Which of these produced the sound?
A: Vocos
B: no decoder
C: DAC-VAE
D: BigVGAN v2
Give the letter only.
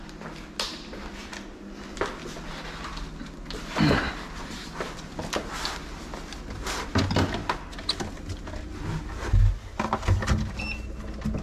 B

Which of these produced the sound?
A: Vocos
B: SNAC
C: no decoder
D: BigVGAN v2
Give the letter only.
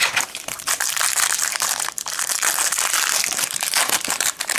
D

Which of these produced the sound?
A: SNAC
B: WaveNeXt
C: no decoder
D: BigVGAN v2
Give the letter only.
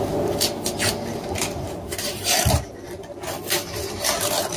D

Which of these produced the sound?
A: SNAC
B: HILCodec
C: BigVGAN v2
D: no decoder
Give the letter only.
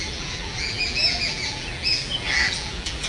C